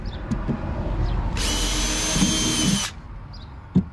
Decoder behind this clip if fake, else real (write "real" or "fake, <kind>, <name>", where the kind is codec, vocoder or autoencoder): real